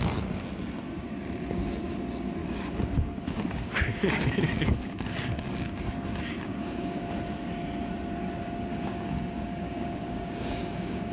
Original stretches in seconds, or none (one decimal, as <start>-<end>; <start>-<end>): 0.0-2.4; 7.0-8.7